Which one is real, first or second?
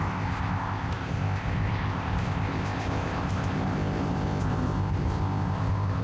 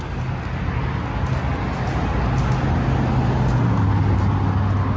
second